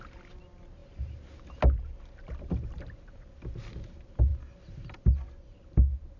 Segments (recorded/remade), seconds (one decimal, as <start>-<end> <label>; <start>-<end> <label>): 0.0-6.2 recorded